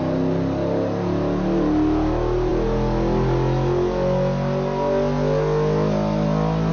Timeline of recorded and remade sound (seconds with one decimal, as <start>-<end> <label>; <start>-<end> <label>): 0.0-6.7 recorded